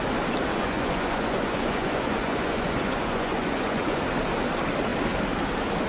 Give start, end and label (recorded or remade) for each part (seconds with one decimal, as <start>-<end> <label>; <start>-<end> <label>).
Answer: 0.0-0.5 recorded; 0.5-4.0 remade; 4.0-5.9 recorded